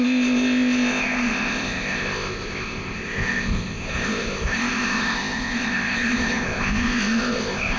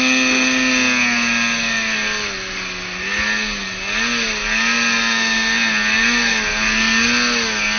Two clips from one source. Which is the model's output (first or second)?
first